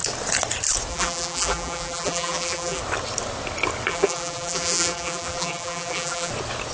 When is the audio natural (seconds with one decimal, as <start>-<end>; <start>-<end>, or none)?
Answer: 0.0-0.9; 2.8-3.9; 6.3-6.7